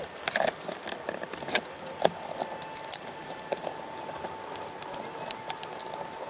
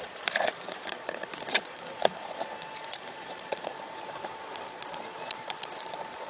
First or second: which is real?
first